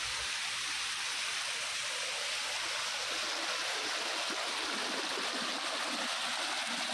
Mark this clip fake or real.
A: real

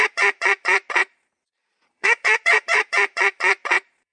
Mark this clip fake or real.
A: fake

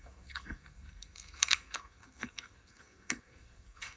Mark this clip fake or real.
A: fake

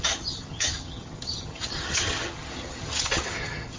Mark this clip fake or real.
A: fake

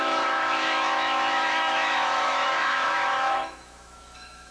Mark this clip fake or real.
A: fake